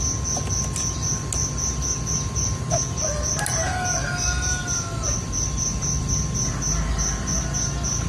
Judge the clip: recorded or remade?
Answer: recorded